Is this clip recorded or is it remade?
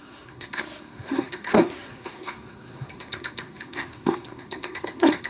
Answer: remade